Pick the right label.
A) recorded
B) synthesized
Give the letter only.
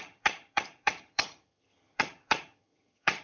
B